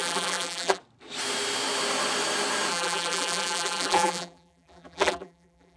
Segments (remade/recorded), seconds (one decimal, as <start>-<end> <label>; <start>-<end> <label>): 0.0-0.8 remade; 0.8-2.7 recorded; 2.7-5.8 remade